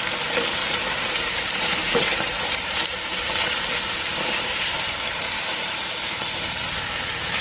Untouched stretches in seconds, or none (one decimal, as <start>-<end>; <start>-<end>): 0.0-0.6; 3.3-4.1; 6.7-7.4